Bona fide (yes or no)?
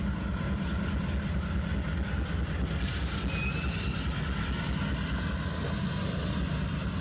yes